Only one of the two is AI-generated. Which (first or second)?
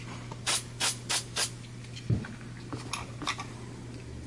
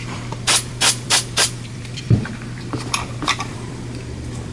second